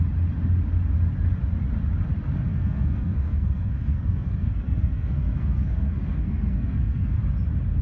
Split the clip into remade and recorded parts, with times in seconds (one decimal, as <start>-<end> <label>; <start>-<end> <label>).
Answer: 0.0-2.5 recorded; 2.5-7.2 remade; 7.2-7.8 recorded